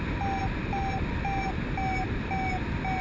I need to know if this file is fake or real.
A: real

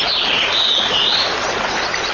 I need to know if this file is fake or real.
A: real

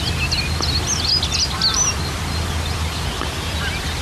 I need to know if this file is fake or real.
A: real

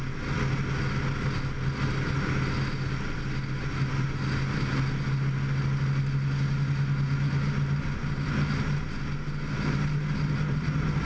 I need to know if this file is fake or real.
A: real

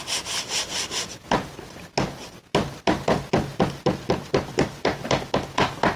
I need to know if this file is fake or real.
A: real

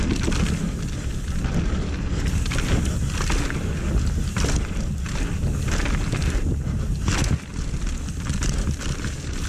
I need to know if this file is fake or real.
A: real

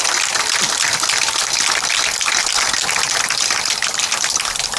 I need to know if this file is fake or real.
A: real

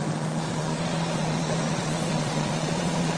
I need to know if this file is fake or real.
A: fake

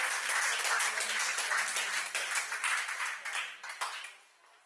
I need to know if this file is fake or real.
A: real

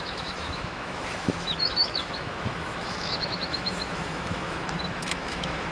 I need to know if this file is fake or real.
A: fake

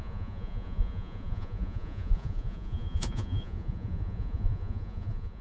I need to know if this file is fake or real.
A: fake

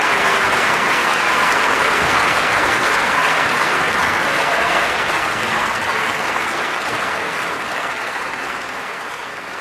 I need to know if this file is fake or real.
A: fake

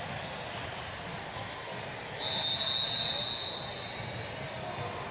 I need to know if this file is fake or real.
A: real